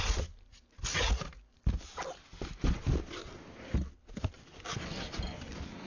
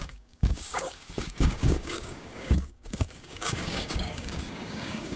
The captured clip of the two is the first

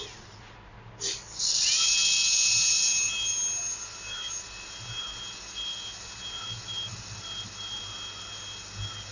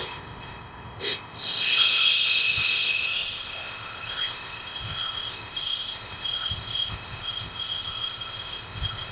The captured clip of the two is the first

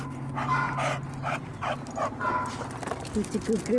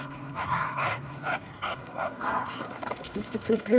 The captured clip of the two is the first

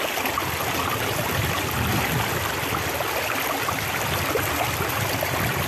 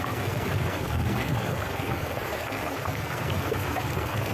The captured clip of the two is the first